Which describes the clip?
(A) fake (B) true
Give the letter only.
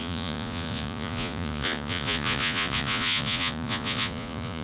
A